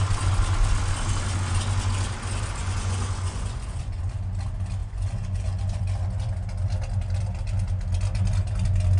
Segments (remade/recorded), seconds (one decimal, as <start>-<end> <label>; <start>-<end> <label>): 0.0-2.6 recorded; 2.6-4.0 remade; 4.0-4.8 recorded; 4.8-5.8 remade; 5.8-9.0 recorded